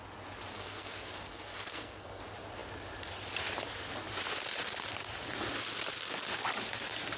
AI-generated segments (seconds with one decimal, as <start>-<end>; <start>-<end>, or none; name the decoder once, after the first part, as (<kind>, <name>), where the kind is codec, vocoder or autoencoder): 0.5-2.2 (codec, SNAC)